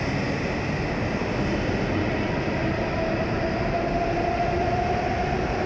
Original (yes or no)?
yes